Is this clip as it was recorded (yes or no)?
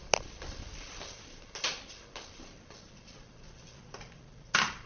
yes